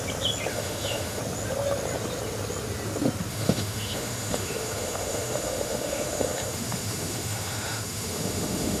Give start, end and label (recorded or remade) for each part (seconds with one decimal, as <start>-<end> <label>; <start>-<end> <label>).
0.0-0.5 recorded; 0.5-1.2 remade; 1.2-3.3 recorded; 3.3-8.8 remade